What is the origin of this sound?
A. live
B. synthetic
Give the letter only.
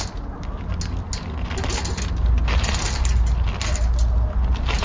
A